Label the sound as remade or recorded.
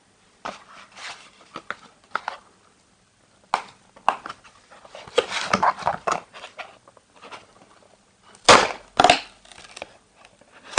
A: recorded